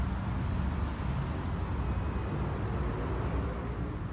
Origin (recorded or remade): recorded